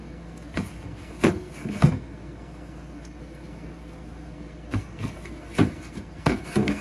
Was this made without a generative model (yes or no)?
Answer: no